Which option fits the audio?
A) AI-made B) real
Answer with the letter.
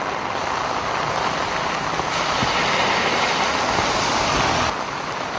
B